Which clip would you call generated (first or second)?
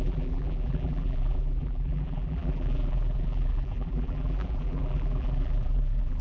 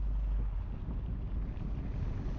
first